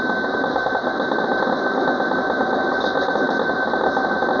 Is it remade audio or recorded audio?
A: remade